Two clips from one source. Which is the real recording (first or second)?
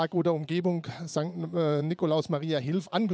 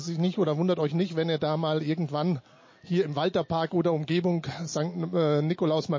second